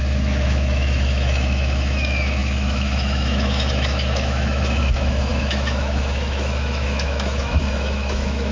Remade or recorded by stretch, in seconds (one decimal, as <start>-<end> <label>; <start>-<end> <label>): 0.0-8.5 remade